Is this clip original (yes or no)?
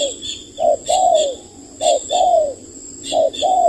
no